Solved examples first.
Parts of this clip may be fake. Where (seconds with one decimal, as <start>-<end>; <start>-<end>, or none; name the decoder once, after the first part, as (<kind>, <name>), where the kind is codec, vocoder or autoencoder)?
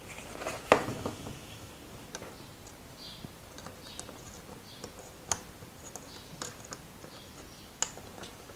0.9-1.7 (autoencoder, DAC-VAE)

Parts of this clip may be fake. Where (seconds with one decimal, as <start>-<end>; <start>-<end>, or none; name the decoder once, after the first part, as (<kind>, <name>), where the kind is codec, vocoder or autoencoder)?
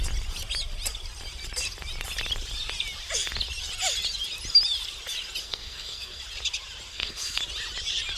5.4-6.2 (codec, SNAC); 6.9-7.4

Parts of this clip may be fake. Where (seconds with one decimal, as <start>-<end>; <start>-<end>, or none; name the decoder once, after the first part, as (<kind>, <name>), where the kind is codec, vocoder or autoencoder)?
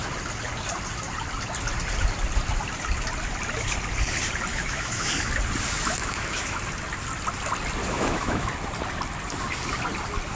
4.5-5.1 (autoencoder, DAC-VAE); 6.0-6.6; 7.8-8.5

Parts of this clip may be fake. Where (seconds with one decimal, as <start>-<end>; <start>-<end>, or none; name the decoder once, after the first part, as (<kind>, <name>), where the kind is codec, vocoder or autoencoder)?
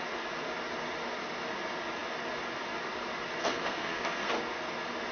3.4-4.3 (codec, SNAC)